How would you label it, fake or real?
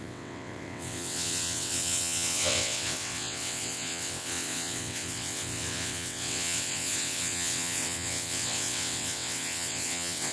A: fake